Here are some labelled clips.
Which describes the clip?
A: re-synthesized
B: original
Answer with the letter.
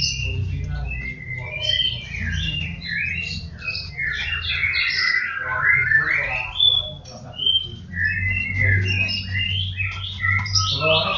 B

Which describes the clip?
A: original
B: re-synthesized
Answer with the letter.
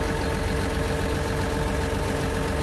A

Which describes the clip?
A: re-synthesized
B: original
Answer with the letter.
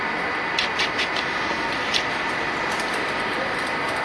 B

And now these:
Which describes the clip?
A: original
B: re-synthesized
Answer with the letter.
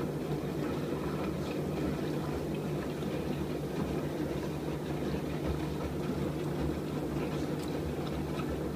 A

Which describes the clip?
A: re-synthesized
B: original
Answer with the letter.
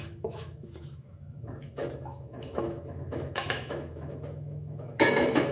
A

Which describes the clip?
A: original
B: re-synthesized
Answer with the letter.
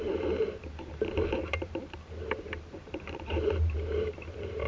B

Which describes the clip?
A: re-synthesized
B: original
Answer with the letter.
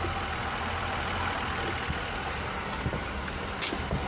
B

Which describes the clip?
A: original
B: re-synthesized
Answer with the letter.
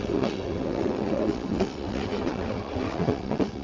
B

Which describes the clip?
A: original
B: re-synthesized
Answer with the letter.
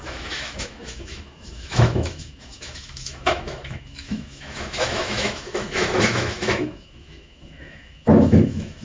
B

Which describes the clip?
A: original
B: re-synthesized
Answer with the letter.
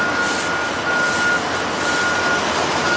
A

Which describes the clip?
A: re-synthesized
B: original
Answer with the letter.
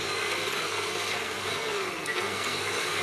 A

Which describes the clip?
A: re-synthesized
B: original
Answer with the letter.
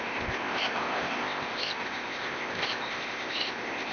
A